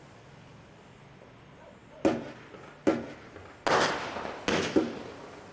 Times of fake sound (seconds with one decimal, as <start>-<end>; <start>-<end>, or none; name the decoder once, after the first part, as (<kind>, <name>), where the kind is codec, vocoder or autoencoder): none